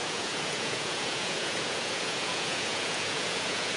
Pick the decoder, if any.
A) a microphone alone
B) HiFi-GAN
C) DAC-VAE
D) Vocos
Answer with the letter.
D